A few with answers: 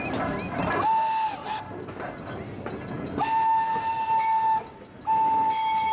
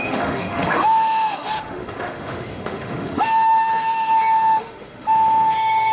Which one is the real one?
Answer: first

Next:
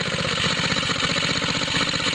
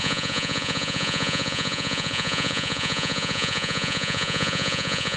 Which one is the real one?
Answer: first